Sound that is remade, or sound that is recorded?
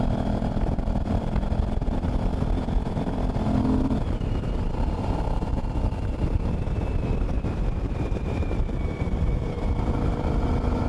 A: remade